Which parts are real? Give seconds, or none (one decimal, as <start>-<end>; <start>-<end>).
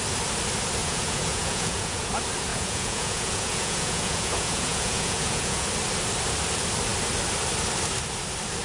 0.0-0.8; 2.1-2.5; 5.7-8.6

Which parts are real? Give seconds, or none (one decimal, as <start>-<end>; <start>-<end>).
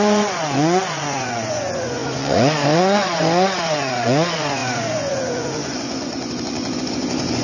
none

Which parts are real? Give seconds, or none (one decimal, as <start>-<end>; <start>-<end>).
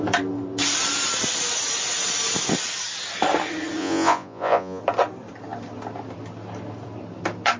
0.0-3.8; 4.8-7.6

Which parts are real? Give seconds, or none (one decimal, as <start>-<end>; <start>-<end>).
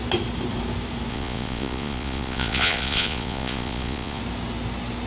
0.0-1.1; 4.2-5.1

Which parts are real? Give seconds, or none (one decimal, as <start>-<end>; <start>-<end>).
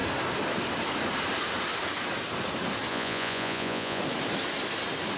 0.0-2.9; 4.0-5.2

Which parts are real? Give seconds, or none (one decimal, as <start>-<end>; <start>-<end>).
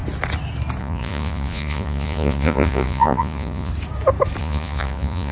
0.0-0.8; 3.7-4.4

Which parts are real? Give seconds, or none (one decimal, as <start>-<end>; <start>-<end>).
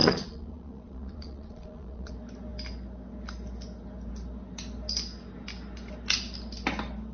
2.1-7.1